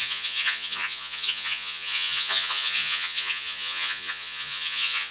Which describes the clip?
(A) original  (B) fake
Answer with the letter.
B